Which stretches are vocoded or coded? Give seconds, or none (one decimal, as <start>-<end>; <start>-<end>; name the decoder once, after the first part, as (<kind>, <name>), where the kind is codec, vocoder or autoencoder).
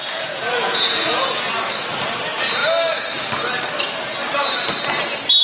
0.0-1.5 (vocoder, Vocos)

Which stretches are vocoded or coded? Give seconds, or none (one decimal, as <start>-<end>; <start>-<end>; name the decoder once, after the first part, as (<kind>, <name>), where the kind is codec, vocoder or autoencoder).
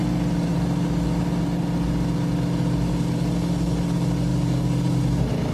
none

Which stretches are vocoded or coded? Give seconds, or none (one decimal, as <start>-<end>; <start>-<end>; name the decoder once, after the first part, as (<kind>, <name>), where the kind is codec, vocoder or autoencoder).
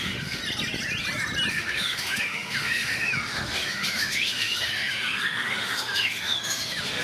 0.0-0.4 (autoencoder, DAC-VAE); 1.5-7.0